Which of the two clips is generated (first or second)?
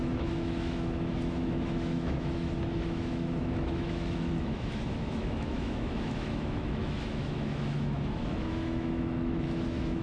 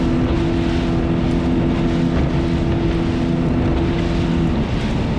first